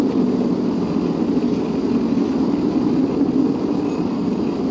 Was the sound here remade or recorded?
recorded